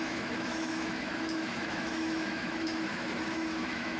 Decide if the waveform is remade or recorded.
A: remade